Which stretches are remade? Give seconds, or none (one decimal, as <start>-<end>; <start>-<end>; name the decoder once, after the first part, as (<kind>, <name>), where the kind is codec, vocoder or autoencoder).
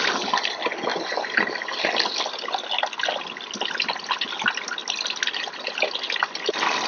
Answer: none